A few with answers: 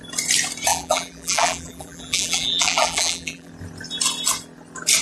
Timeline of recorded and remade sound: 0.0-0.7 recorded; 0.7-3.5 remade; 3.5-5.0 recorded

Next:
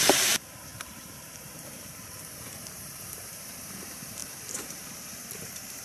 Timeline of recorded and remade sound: 0.0-5.8 remade